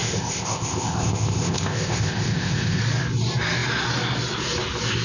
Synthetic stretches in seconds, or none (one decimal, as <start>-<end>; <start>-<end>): 0.0-2.8